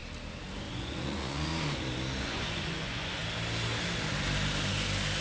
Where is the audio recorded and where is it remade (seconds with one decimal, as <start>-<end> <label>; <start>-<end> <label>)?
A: 0.0-0.7 recorded; 0.7-1.5 remade; 1.5-2.2 recorded; 2.2-3.2 remade; 3.2-5.2 recorded